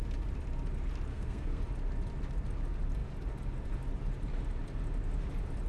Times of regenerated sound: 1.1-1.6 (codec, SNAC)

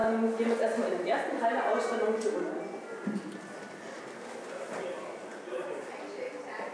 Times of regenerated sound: none

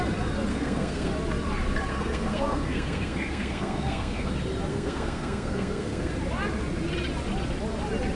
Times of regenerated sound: 0.5-1.1 (codec, SNAC); 1.9-4.3; 4.7-6.1